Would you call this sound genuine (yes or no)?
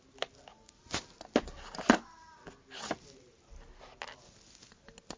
yes